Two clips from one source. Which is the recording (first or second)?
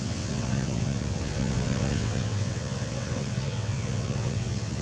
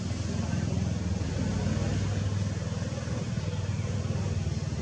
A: second